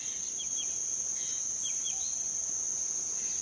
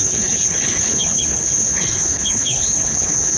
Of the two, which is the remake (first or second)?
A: second